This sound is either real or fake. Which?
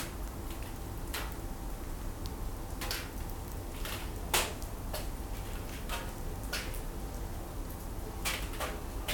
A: real